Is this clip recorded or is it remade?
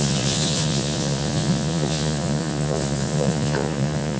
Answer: remade